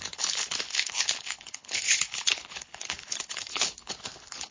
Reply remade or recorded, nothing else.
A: remade